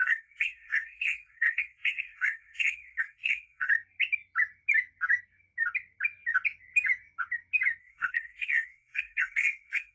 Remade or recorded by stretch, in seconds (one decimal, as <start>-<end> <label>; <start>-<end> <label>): 0.0-3.7 remade; 3.7-7.8 recorded; 7.8-9.9 remade